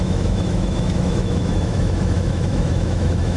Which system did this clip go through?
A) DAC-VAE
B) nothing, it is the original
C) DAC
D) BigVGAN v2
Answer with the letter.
A